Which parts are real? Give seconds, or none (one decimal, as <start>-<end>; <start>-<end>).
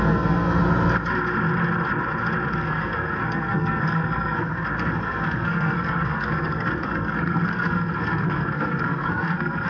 0.6-2.5